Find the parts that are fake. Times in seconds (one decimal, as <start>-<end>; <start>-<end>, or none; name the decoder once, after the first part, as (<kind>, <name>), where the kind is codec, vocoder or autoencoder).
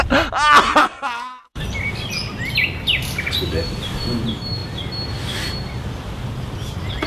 0.8-1.6 (codec, SNAC)